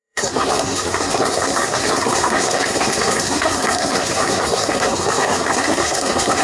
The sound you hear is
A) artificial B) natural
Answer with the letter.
A